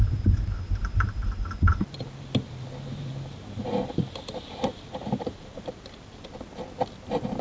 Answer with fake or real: fake